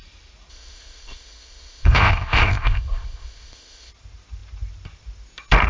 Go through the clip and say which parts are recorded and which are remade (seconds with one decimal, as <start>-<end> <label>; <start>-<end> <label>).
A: 0.0-0.5 recorded; 0.5-3.9 remade; 3.9-5.7 recorded